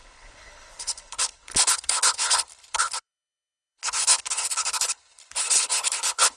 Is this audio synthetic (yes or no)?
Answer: yes